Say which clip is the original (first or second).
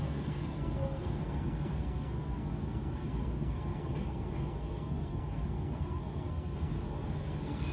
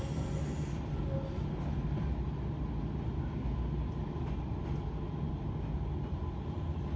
second